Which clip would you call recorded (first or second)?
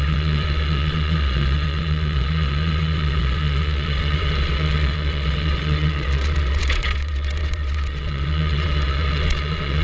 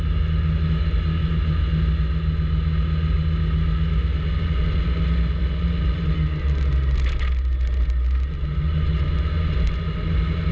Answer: second